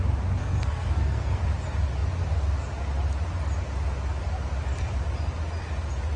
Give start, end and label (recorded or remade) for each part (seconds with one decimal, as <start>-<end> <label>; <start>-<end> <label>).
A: 0.0-0.4 recorded; 0.4-1.4 remade; 1.4-6.2 recorded